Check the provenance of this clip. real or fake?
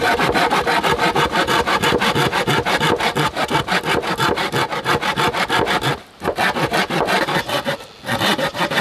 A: real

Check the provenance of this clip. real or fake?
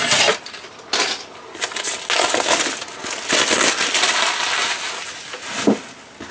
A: real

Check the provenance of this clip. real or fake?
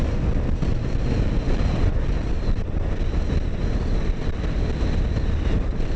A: real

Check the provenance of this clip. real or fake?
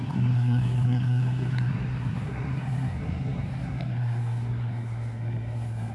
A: fake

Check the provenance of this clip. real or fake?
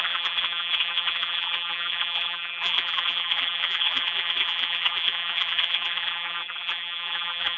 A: fake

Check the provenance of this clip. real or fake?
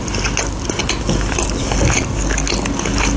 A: real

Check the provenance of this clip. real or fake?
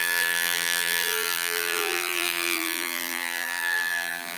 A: fake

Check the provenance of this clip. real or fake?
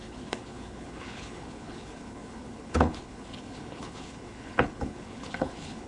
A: fake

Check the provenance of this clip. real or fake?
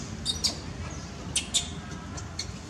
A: real